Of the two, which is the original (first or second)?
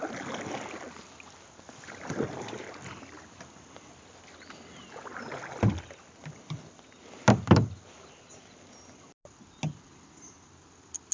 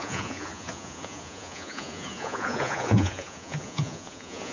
first